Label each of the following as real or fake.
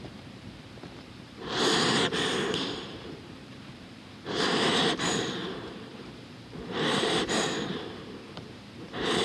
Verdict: fake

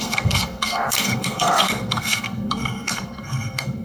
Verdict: fake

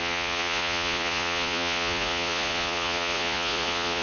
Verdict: fake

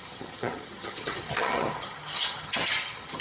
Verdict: fake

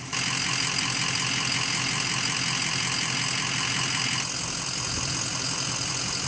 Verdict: real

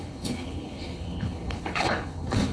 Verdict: fake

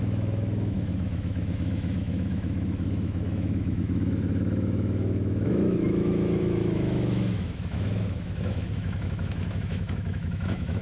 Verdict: fake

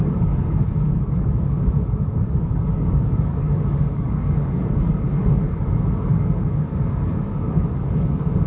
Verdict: fake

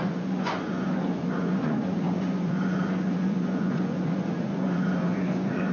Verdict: fake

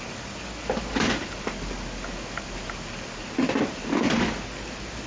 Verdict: real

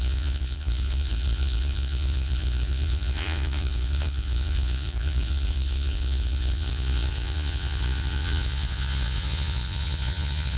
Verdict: fake